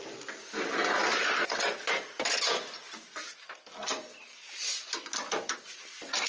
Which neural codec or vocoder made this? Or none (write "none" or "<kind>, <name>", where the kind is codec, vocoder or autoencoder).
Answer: none